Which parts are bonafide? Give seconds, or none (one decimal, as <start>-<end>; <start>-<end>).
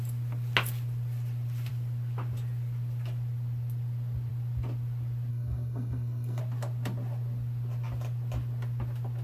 0.0-5.3; 6.4-9.2